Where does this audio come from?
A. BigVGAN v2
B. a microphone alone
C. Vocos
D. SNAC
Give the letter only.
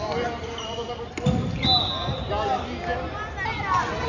B